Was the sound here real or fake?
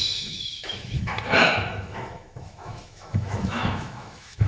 fake